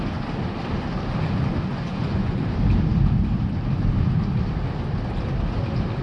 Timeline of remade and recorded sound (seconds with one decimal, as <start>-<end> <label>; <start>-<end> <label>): 0.0-1.7 recorded; 1.7-2.4 remade; 2.4-6.0 recorded